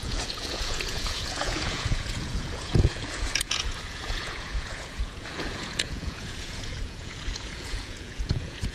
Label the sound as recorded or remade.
remade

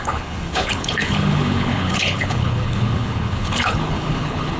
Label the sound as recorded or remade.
remade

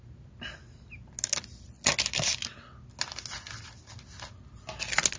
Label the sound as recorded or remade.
recorded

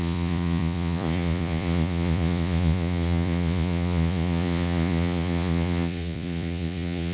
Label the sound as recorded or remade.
remade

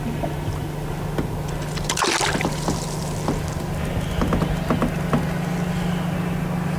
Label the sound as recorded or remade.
recorded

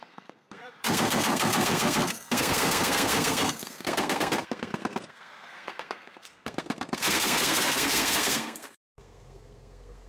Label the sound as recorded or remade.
remade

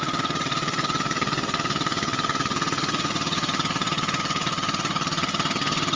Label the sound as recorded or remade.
remade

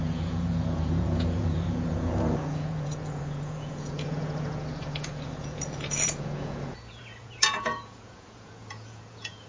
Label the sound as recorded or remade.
remade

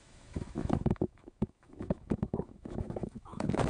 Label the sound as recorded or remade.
remade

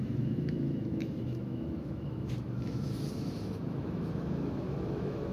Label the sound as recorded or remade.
remade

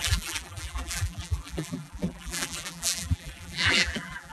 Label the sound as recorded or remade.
remade